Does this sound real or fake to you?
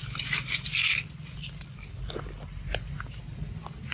real